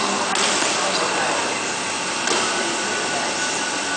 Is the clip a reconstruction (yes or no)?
no